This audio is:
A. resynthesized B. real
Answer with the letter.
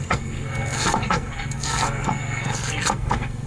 A